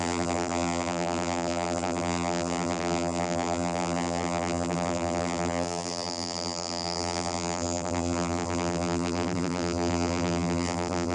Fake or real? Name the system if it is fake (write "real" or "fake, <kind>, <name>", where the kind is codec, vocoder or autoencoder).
fake, vocoder, BigVGAN v2